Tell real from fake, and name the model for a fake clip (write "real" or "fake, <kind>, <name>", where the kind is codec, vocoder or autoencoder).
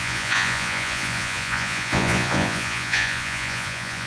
fake, vocoder, Vocos